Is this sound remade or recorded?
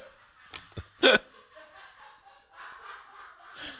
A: recorded